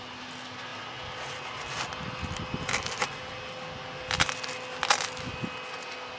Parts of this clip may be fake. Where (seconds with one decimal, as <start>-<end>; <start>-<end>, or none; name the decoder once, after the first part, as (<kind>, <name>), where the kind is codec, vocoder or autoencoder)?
none